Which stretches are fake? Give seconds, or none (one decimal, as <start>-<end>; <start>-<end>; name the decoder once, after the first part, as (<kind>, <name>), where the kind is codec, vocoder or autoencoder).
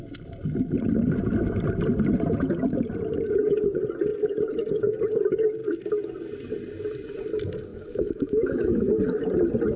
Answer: 7.7-9.0 (autoencoder, DAC-VAE)